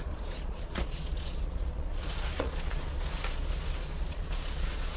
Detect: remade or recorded remade